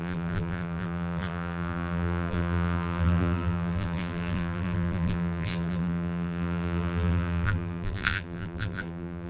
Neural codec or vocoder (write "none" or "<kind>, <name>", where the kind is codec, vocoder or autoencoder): vocoder, BigVGAN v2